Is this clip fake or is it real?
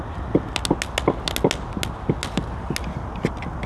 real